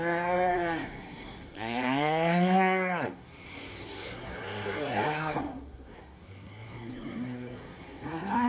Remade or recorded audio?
remade